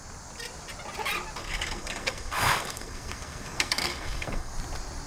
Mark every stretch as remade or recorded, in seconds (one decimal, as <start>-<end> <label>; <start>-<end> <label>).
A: 0.0-1.4 recorded; 1.4-4.5 remade; 4.5-5.1 recorded